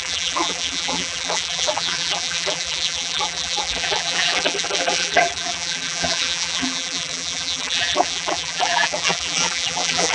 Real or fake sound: fake